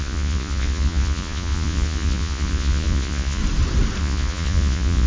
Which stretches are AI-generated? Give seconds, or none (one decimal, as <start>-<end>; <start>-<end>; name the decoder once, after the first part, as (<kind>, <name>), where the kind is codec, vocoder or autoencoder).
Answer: 0.0-3.4 (vocoder, Vocos); 4.0-5.1